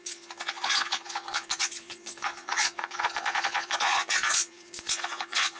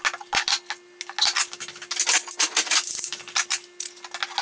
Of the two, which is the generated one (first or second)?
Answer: first